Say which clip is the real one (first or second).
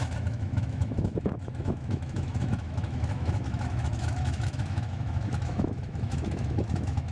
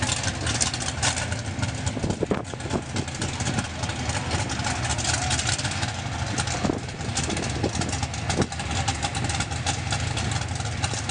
second